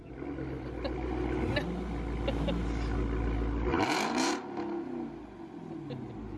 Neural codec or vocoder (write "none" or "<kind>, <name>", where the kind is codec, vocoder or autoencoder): none